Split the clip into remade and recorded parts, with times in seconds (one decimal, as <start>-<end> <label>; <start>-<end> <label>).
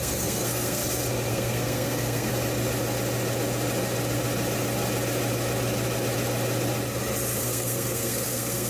0.0-0.8 remade; 0.8-1.3 recorded; 1.3-2.3 remade; 2.3-7.4 recorded; 7.4-8.7 remade